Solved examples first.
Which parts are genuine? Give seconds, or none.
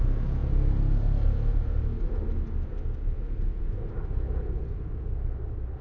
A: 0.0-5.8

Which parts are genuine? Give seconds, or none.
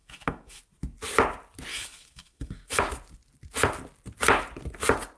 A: 0.6-1.7; 2.8-5.2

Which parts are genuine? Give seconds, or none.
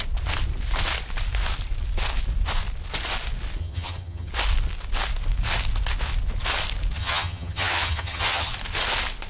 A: 0.0-3.6; 4.3-7.0; 8.5-9.3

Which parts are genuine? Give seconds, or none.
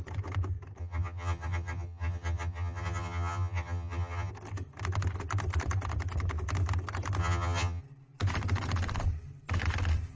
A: 0.0-0.8; 4.3-7.2; 7.8-10.2